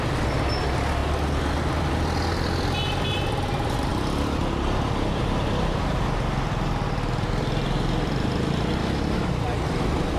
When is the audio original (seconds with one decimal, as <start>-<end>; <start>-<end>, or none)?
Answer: 0.0-8.8; 9.3-10.2